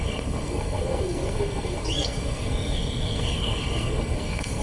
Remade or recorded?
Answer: remade